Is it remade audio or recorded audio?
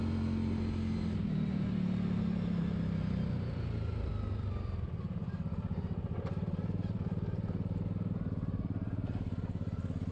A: recorded